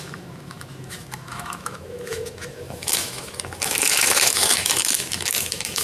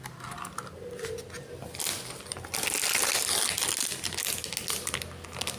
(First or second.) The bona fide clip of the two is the second